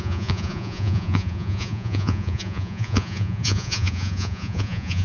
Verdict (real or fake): fake